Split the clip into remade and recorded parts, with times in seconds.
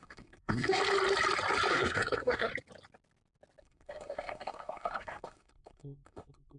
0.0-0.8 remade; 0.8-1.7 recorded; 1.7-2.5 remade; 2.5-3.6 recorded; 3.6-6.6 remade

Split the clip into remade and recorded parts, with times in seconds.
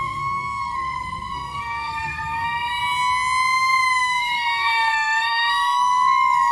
0.0-2.8 remade; 2.8-4.2 recorded; 4.2-6.5 remade